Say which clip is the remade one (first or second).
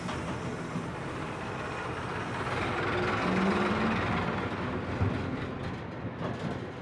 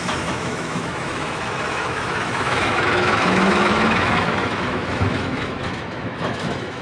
second